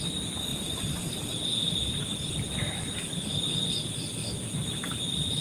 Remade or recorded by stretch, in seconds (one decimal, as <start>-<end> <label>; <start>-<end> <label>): 0.0-0.5 recorded; 0.5-1.1 remade; 1.1-2.6 recorded; 2.6-3.1 remade; 3.1-5.4 recorded